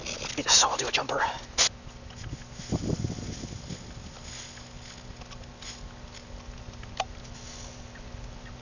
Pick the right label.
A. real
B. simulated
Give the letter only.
A